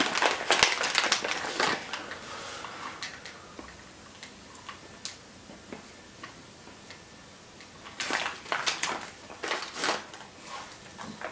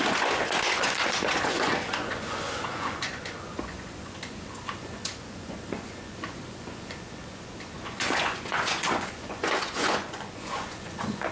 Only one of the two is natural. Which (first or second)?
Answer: first